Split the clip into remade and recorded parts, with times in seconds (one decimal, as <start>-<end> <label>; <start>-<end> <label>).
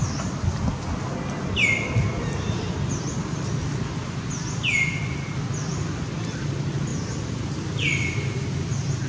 0.0-9.1 recorded